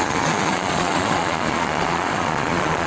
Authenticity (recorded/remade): remade